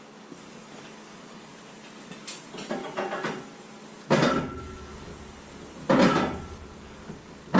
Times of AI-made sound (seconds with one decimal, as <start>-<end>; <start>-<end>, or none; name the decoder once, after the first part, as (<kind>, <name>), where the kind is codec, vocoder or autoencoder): 0.0-1.5 (codec, DAC); 4.6-5.1; 6.8-7.6